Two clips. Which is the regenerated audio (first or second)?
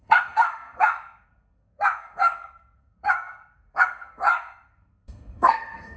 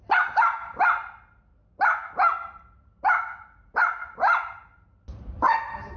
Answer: first